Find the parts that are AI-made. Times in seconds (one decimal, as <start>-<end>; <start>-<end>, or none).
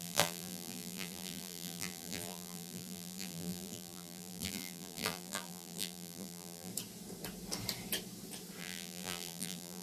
0.0-6.7; 8.6-9.8